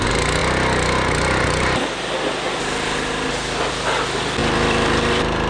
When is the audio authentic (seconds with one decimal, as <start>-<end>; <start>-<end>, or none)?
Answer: 0.0-4.4